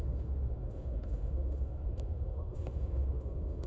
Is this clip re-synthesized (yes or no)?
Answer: yes